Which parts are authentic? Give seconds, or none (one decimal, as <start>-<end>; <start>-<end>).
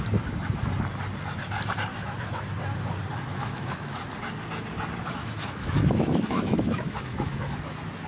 0.0-1.9; 2.4-3.3; 4.1-5.2; 7.6-8.1